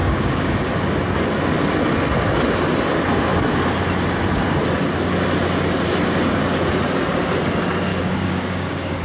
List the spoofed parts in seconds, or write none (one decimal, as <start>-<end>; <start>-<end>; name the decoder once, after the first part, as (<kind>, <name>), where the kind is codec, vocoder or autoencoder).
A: 0.0-0.7 (codec, DAC); 7.9-9.0